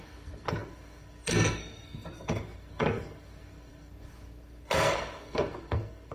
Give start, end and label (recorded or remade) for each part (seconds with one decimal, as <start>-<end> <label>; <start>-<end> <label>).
0.0-6.1 remade